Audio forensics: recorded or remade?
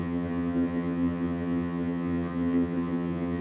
remade